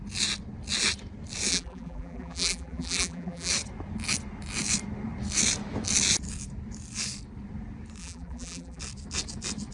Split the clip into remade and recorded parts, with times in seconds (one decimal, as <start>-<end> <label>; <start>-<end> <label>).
0.0-1.5 recorded; 1.5-3.5 remade; 3.5-8.0 recorded; 8.0-8.8 remade; 8.8-9.7 recorded

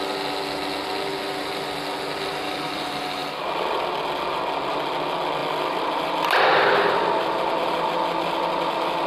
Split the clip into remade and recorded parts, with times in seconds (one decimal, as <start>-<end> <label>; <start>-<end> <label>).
0.0-3.2 recorded; 3.2-3.9 remade; 3.9-5.4 recorded; 5.4-6.9 remade; 6.9-9.1 recorded

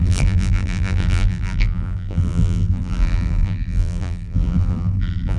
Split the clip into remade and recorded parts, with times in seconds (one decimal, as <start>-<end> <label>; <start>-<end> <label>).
0.0-5.4 remade

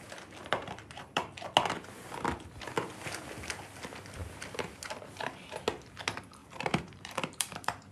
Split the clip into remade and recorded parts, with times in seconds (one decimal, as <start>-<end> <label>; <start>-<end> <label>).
0.0-0.4 recorded; 0.4-1.5 remade; 1.5-6.4 recorded; 6.4-7.9 remade

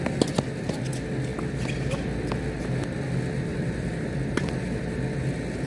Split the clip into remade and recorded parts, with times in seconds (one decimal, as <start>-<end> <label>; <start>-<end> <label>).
0.0-3.5 recorded; 3.5-5.0 remade; 5.0-5.7 recorded

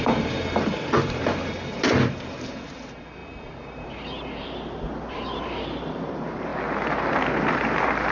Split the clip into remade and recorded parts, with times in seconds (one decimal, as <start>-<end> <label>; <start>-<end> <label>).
0.0-3.2 remade; 3.2-5.1 recorded; 5.1-6.5 remade; 6.5-7.1 recorded; 7.1-8.1 remade

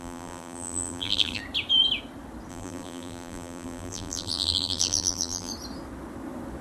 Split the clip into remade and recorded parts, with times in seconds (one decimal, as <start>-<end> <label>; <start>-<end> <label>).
0.0-1.4 remade; 1.4-2.5 recorded; 2.5-5.5 remade; 5.5-6.6 recorded

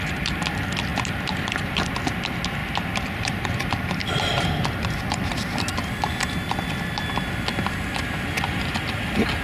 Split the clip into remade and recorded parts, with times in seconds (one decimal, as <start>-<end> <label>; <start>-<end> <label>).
0.0-0.9 recorded; 0.9-1.9 remade; 1.9-2.6 recorded; 2.6-5.9 remade; 5.9-9.4 recorded